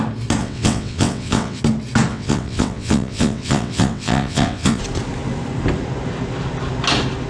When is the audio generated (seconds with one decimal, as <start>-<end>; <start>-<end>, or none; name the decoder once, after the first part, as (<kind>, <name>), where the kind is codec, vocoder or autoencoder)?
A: 0.4-1.6 (vocoder, WaveNeXt); 2.1-4.8